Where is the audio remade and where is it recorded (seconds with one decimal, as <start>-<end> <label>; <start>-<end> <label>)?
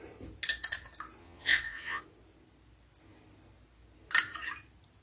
0.0-1.2 recorded; 1.2-2.0 remade; 2.0-5.0 recorded